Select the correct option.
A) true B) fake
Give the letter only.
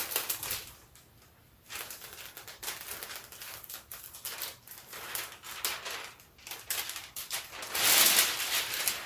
A